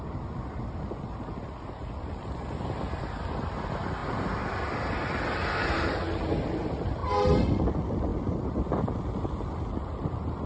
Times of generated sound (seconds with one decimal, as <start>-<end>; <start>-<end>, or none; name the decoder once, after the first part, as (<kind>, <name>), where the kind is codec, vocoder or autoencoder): none